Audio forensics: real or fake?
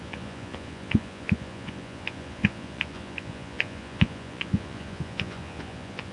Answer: fake